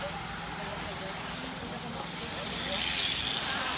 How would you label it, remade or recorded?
recorded